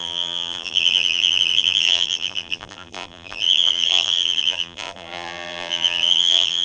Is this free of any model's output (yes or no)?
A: no